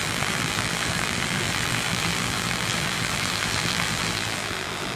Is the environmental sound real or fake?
fake